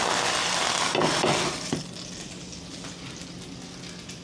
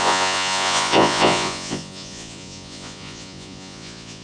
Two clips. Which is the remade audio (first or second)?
second